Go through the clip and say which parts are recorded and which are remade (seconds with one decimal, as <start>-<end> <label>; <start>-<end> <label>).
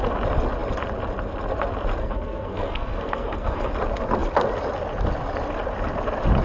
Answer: 0.0-2.0 recorded; 2.0-3.7 remade; 3.7-6.4 recorded